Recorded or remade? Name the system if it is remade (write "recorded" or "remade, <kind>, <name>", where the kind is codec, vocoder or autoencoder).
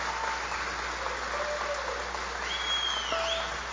recorded